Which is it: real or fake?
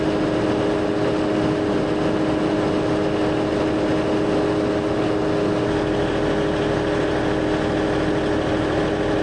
real